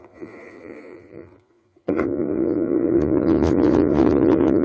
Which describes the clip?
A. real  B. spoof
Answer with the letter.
B